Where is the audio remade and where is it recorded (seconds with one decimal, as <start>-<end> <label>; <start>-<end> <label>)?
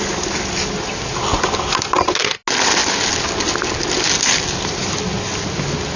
0.0-6.0 recorded